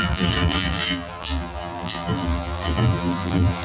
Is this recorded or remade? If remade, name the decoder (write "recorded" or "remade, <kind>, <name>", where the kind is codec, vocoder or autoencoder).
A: remade, vocoder, BigVGAN v2